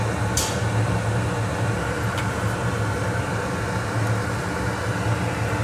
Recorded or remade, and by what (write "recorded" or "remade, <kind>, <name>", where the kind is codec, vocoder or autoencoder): recorded